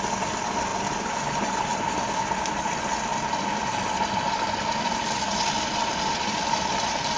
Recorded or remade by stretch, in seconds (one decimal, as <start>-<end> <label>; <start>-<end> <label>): 0.0-3.1 recorded; 3.1-6.2 remade; 6.2-7.2 recorded